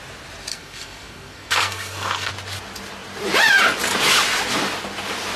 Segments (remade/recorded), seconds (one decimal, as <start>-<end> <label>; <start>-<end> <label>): 0.0-0.5 recorded; 0.5-2.3 remade; 2.3-5.4 recorded